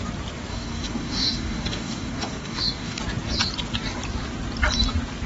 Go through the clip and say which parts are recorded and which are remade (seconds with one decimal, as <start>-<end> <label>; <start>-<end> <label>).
0.0-0.5 recorded; 0.5-3.0 remade; 3.0-5.3 recorded